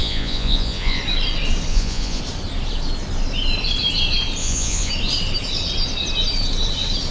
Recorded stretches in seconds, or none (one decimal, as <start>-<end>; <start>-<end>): 1.0-1.7; 2.2-4.4; 4.9-7.1